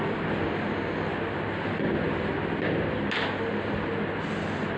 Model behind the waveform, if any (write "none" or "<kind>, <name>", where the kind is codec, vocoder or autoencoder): none